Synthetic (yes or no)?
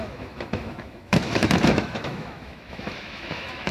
yes